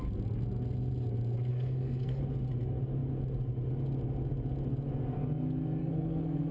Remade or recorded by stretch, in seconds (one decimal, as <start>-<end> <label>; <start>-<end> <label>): 0.0-1.5 recorded; 1.5-2.2 remade; 2.2-5.8 recorded; 5.8-6.5 remade